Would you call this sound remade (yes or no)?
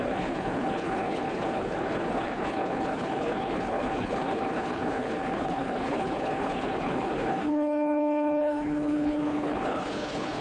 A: yes